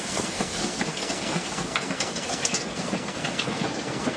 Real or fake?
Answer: fake